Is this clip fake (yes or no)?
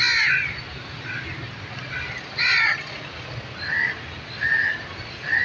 no